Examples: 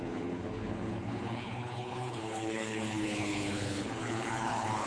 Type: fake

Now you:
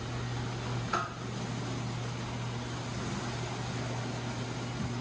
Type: real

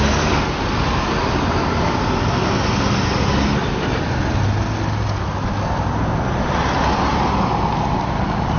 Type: real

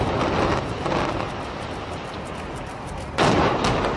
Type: real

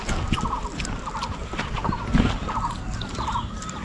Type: real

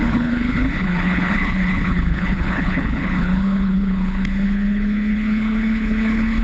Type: fake